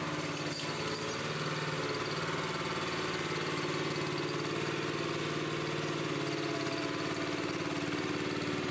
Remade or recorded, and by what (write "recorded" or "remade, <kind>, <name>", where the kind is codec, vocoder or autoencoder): recorded